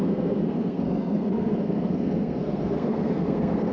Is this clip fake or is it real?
fake